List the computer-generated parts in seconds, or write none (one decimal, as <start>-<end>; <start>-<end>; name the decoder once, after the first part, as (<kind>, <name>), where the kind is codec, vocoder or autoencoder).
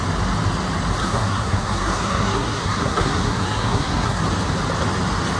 1.0-4.2 (codec, SNAC)